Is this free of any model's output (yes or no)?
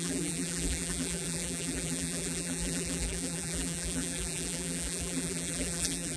no